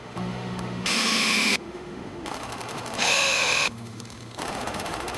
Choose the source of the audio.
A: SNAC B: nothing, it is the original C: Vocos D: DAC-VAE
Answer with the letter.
D